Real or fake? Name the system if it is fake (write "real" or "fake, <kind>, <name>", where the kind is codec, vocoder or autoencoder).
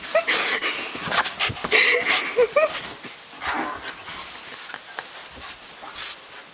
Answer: real